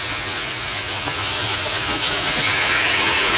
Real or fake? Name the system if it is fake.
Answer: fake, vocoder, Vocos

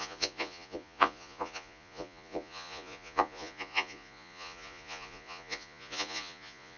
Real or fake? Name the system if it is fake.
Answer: fake, vocoder, Vocos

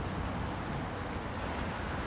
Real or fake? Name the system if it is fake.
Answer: real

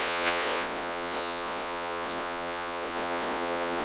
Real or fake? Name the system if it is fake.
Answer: fake, vocoder, Vocos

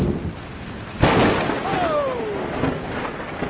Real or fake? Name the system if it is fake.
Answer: real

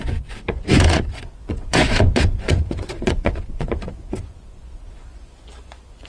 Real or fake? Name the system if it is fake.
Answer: fake, vocoder, Vocos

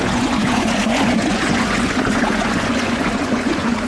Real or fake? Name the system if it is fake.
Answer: fake, vocoder, Vocos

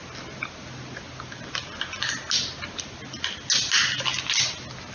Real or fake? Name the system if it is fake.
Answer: real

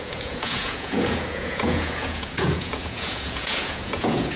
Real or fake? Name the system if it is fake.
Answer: fake, vocoder, Vocos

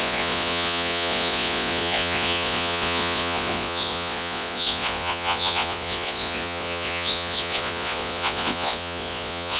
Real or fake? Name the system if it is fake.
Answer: fake, vocoder, Vocos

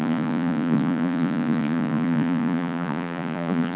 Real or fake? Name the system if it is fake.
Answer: fake, vocoder, Vocos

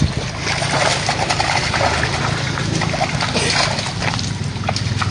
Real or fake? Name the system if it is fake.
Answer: real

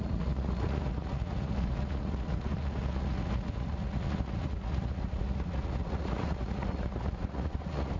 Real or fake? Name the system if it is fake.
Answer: fake, vocoder, Vocos